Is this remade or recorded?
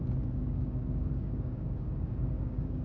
remade